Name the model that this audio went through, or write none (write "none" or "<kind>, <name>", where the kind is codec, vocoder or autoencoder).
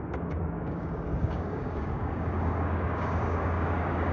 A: codec, DAC